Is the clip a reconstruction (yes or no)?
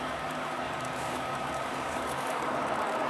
yes